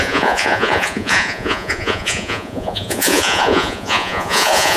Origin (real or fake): fake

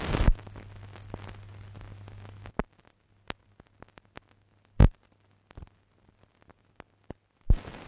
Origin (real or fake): real